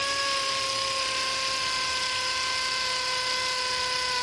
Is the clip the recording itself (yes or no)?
yes